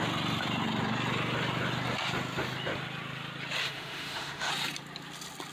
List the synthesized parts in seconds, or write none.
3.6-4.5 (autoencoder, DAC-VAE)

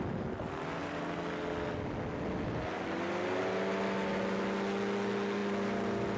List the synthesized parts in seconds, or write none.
none

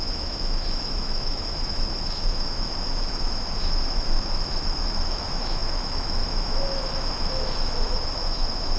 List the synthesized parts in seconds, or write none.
0.0-8.8 (autoencoder, DAC-VAE)